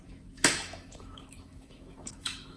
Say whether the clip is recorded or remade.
remade